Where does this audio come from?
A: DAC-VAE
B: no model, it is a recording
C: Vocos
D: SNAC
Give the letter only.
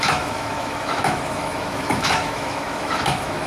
A